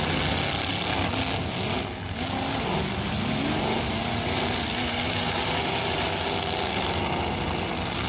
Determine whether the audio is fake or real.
real